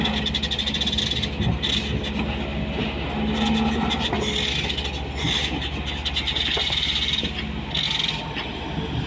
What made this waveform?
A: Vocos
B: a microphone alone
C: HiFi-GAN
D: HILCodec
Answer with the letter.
B